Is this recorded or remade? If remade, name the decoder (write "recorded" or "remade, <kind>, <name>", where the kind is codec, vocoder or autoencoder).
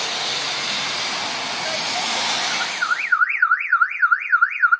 recorded